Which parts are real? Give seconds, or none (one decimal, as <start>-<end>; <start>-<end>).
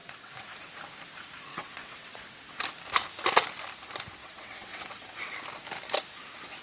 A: 0.6-1.5; 2.4-4.2; 5.4-6.6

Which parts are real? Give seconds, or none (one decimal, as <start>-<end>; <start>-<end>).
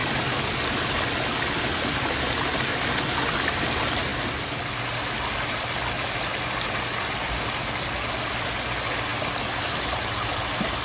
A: 0.0-10.8